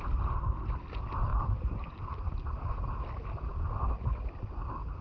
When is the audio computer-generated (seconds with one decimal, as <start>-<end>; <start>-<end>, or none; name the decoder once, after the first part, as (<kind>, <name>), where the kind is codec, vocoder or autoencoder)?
1.3-3.0 (vocoder, BigVGAN v2)